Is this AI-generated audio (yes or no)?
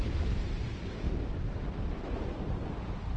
no